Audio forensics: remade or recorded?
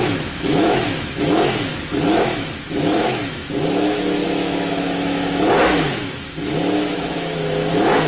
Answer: remade